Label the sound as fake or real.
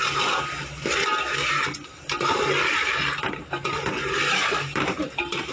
real